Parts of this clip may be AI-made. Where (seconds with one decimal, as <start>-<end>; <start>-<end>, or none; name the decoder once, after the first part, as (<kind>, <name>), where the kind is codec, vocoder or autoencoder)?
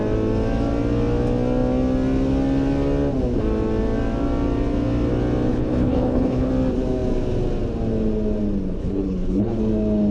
5.5-6.5 (codec, HILCodec); 8.8-9.6